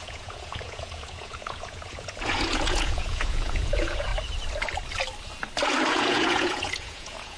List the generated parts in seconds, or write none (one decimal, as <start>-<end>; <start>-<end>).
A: 0.0-4.1; 5.9-7.4